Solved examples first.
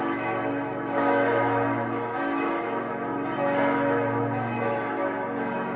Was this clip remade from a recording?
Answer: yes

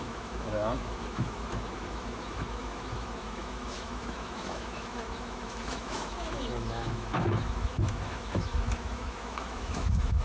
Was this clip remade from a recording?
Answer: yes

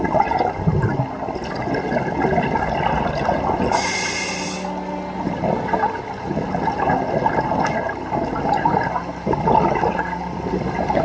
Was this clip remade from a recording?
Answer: no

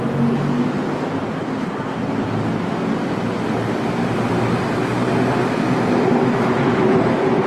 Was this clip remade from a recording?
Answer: no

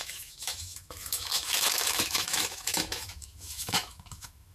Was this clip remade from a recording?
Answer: yes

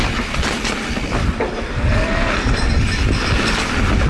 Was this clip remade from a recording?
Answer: no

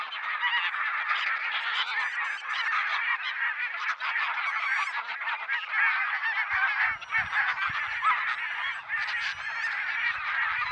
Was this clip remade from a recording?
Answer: no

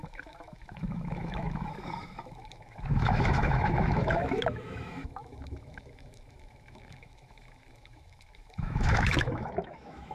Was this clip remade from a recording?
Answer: yes